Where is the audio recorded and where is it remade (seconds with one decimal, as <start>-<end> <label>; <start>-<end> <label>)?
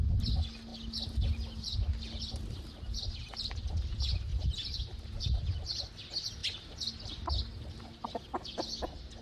0.0-4.3 recorded; 4.3-5.2 remade; 5.2-9.2 recorded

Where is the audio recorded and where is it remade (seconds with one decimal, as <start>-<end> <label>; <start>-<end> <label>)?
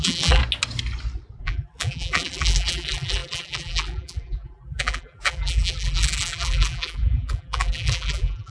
0.0-0.4 remade; 0.4-1.4 recorded; 1.4-8.5 remade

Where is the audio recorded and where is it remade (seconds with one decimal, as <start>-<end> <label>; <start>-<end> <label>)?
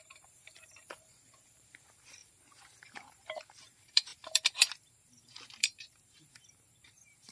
0.0-7.3 remade